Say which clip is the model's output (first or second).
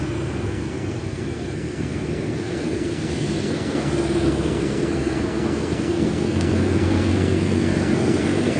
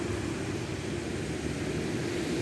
first